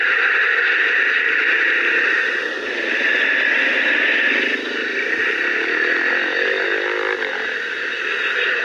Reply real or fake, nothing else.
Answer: real